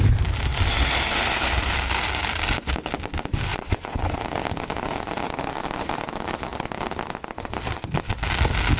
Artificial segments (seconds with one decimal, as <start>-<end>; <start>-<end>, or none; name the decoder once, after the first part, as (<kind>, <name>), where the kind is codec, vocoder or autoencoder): 3.5-4.2 (vocoder, WaveNeXt)

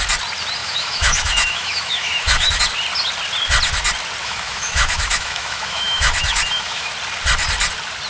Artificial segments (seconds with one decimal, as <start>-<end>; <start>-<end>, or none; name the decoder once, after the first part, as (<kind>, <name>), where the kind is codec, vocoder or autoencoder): 0.6-2.6 (autoencoder, DAC-VAE); 4.2-6.9